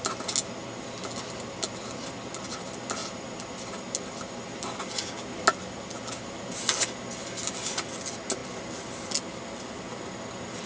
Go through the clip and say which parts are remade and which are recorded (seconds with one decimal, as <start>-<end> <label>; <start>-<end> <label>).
0.0-10.7 recorded